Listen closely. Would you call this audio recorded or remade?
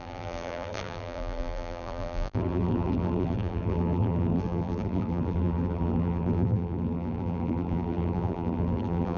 remade